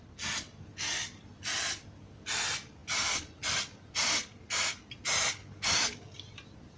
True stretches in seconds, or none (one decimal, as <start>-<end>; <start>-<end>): 0.0-6.8